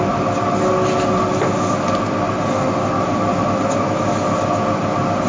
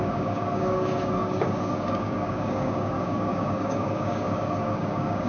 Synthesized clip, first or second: second